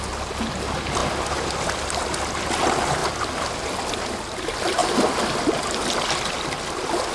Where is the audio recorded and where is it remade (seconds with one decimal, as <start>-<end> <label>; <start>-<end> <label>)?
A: 0.0-4.8 recorded; 4.8-5.4 remade; 5.4-7.1 recorded